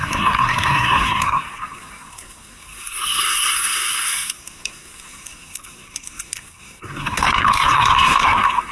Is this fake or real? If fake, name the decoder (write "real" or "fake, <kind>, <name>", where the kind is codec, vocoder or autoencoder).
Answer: fake, codec, SNAC